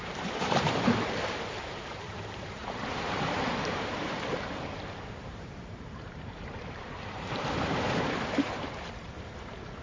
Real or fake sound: fake